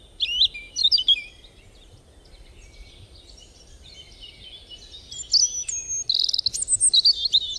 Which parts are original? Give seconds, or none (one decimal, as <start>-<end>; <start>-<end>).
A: 0.0-0.8; 2.9-7.6